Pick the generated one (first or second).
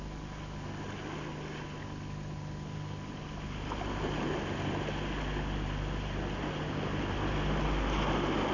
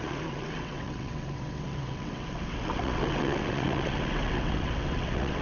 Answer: second